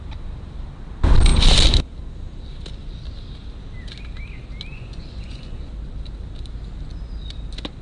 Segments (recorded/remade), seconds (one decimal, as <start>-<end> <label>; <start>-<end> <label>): 0.0-4.7 recorded; 4.7-5.7 remade; 5.7-7.8 recorded